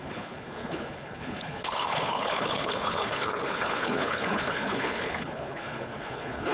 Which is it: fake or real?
fake